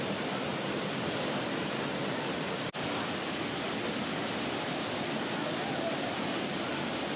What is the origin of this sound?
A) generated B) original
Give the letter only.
B